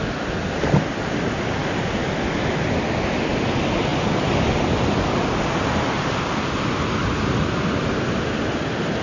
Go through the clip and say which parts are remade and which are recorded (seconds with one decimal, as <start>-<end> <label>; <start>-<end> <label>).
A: 0.0-9.0 recorded